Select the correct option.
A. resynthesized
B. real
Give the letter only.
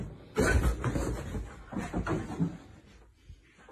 B